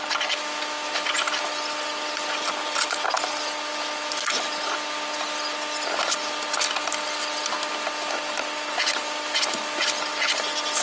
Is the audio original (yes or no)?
yes